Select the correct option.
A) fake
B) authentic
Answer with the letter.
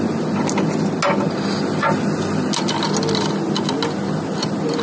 B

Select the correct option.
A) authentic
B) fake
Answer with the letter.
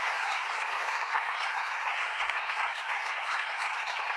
B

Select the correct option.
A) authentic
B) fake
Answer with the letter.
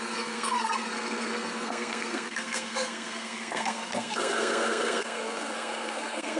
B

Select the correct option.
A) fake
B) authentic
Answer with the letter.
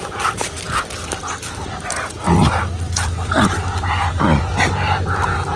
B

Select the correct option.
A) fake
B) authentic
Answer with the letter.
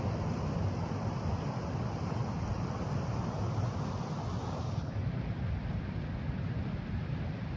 B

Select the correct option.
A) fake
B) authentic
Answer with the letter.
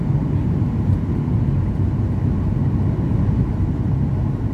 B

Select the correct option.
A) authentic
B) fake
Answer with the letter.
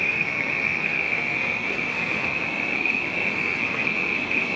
B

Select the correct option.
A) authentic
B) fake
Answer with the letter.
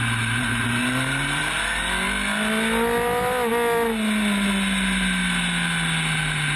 A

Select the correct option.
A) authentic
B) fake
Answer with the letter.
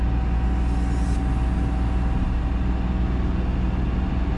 A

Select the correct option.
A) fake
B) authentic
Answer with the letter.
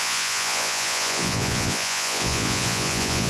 A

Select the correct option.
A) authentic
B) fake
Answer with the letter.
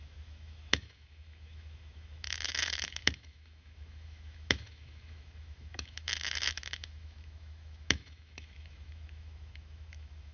B